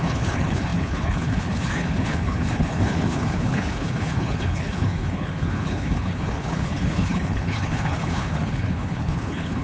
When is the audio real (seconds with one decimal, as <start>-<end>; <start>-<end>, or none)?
none